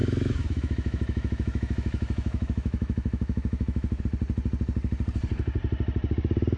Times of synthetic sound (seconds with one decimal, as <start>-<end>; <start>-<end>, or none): 0.0-4.0